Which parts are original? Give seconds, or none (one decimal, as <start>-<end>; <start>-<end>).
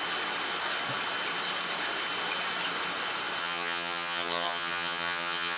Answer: 0.0-3.4